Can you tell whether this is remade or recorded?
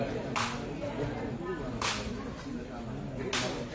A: recorded